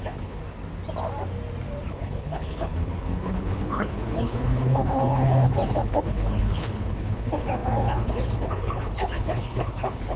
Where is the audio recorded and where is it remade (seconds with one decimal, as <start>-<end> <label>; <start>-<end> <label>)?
0.0-0.4 remade; 0.4-1.9 recorded; 1.9-10.2 remade